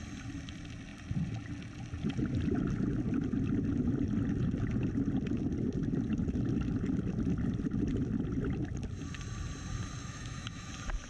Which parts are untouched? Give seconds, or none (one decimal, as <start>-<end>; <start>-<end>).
0.0-10.0; 10.7-11.1